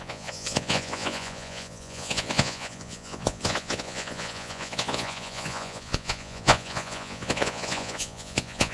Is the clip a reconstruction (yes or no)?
yes